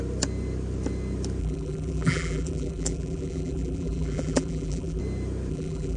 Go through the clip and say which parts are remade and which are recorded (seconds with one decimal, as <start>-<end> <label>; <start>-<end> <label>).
0.0-1.4 recorded; 1.4-5.0 remade; 5.0-5.5 recorded; 5.5-6.0 remade